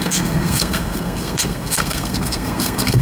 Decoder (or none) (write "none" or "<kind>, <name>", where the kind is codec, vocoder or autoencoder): codec, SNAC